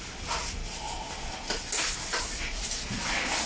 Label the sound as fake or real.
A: real